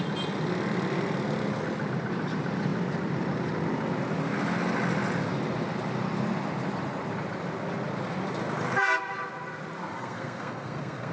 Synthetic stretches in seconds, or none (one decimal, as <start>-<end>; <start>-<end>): 9.8-11.1